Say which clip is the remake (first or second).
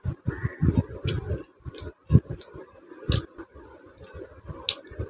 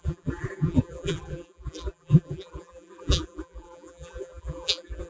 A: second